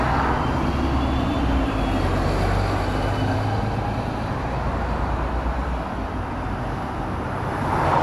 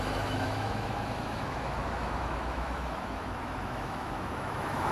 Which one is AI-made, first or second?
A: second